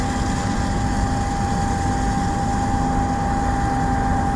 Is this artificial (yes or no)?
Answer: no